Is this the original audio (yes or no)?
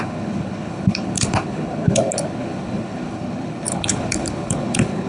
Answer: no